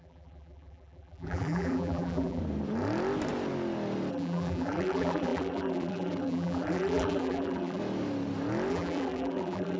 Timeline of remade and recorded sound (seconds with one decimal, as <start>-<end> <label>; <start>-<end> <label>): 0.0-2.4 remade; 2.4-4.1 recorded; 4.1-7.8 remade; 7.8-8.7 recorded; 8.7-9.8 remade